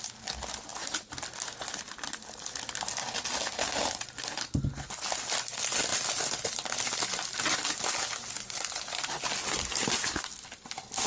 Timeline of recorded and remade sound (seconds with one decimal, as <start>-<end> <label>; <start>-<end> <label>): 0.0-5.9 recorded; 5.9-8.5 remade; 8.5-11.1 recorded